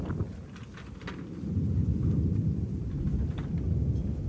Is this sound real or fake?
real